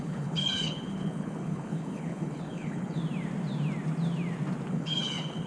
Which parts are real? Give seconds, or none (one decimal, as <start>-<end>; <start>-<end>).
3.0-4.7